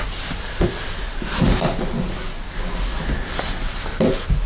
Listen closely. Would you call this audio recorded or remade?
recorded